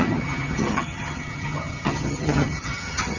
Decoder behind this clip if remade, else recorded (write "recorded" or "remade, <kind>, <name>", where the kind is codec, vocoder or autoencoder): remade, vocoder, HiFi-GAN